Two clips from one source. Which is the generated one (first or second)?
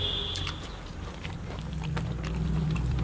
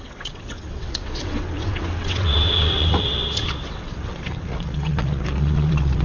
second